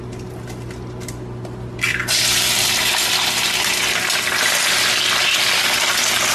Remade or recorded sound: recorded